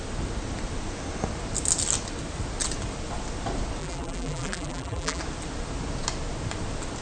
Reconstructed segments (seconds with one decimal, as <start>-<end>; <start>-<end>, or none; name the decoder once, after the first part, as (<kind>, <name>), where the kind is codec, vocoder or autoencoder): 3.8-5.2 (vocoder, BigVGAN v2)